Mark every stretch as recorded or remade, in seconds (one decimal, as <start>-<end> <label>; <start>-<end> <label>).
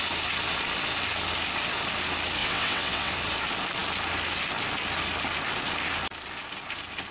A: 0.0-2.4 recorded; 2.4-3.1 remade; 3.1-7.1 recorded